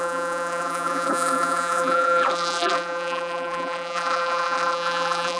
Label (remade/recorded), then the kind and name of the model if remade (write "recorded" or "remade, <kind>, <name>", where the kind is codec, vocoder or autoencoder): remade, vocoder, BigVGAN v2